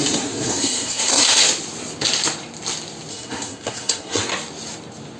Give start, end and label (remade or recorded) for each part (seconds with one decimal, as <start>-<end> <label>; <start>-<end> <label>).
0.0-1.4 remade; 1.4-3.1 recorded; 3.1-4.3 remade; 4.3-5.2 recorded